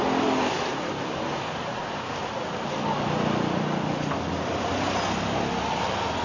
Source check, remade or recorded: recorded